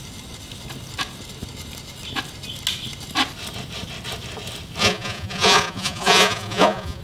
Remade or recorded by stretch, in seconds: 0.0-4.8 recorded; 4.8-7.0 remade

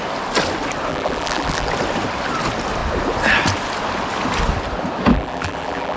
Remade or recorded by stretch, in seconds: 0.0-0.9 recorded; 0.9-1.7 remade; 1.7-5.1 recorded; 5.1-6.0 remade

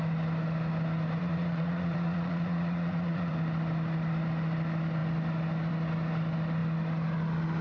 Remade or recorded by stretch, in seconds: 0.0-1.2 recorded; 1.2-3.3 remade; 3.3-7.6 recorded

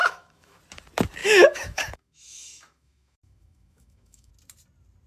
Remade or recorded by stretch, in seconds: 0.0-0.6 remade; 0.6-1.2 recorded; 1.2-4.3 remade; 4.3-5.1 recorded

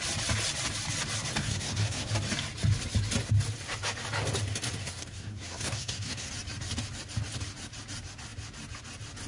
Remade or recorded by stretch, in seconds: 0.0-1.4 recorded; 1.4-2.1 remade; 2.1-4.8 recorded; 4.8-6.3 remade; 6.3-9.3 recorded